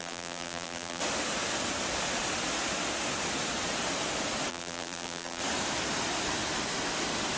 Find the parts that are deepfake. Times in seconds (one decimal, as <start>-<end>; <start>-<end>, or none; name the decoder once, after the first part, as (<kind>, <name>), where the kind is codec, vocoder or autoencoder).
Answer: 0.0-1.0 (vocoder, BigVGAN v2); 4.5-5.4